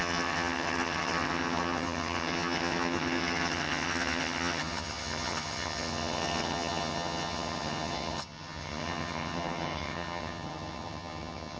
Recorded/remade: remade